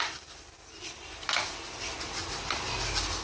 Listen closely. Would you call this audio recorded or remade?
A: remade